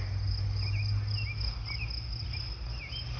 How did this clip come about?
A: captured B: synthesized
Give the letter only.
A